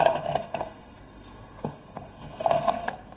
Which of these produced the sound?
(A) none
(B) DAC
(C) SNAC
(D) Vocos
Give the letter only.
C